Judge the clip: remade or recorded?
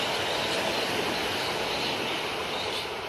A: recorded